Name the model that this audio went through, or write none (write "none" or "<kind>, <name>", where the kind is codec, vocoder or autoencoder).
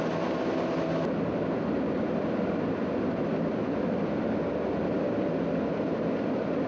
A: none